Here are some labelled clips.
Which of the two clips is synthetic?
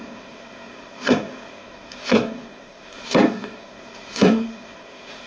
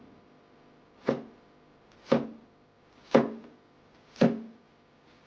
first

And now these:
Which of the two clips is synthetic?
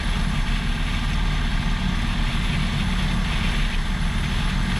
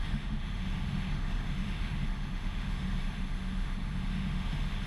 second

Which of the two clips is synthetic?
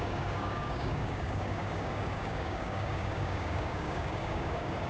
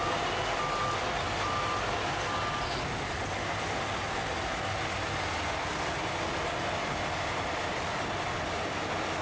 first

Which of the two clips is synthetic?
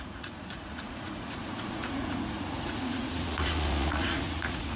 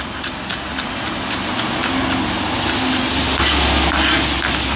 first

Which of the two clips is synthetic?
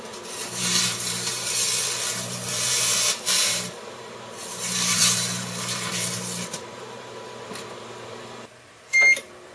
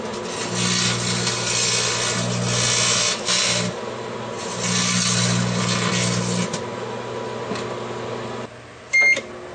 first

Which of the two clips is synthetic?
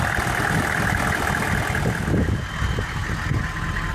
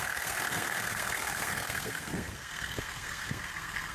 second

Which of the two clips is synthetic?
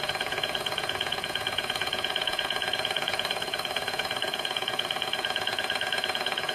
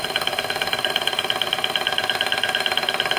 first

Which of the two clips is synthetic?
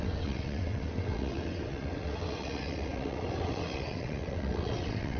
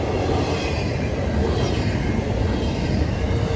first